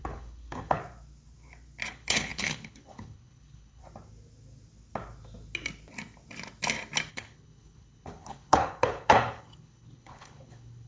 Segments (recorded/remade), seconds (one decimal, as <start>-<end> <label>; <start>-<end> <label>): 0.0-0.8 remade; 0.8-1.9 recorded; 1.9-3.8 remade; 3.8-7.1 recorded; 7.1-10.9 remade